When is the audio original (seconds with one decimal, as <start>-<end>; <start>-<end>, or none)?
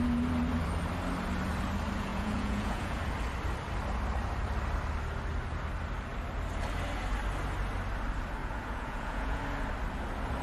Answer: 0.0-2.1; 3.0-8.4; 9.4-10.4